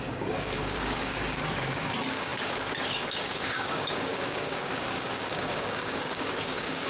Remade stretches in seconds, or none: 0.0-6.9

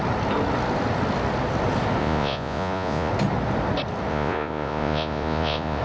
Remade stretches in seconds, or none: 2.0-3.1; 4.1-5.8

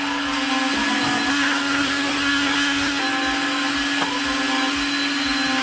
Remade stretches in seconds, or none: 1.3-3.0

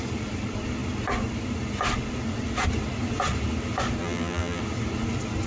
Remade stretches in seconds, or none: 4.0-4.6